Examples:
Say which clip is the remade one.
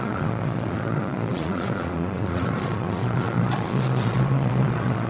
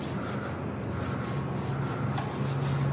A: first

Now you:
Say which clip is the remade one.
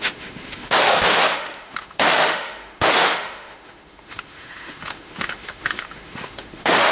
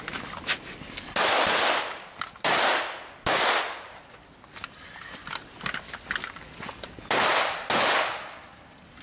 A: first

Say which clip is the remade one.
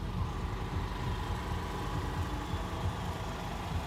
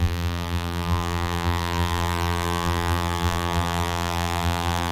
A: second